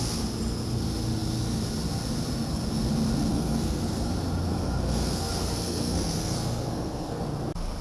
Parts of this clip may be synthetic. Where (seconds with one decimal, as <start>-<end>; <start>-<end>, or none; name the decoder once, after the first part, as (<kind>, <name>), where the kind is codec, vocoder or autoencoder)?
3.3-4.1 (codec, SNAC); 4.5-7.2